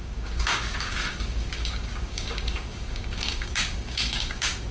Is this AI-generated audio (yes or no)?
yes